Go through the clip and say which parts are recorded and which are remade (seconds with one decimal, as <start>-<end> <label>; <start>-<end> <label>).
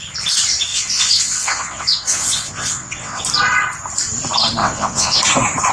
0.0-0.7 recorded; 0.7-3.2 remade; 3.2-4.6 recorded; 4.6-5.2 remade; 5.2-5.7 recorded